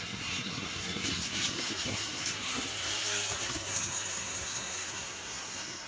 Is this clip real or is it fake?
fake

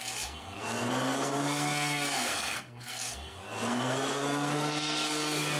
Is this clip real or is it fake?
fake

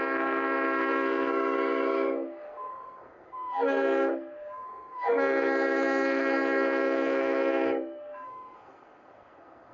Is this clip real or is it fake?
fake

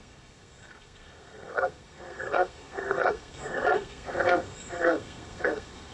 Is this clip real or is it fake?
fake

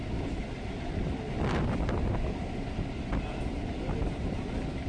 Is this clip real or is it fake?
real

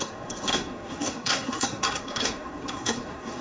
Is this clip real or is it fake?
fake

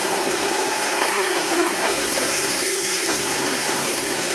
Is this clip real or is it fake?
fake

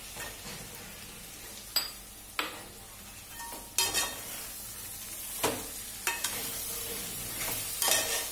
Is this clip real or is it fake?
real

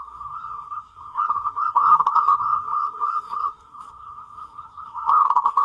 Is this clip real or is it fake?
fake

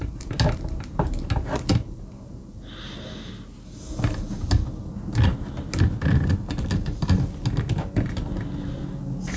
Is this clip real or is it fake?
real